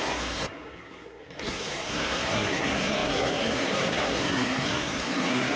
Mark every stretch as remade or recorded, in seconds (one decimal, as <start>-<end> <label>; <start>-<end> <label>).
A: 0.0-5.6 remade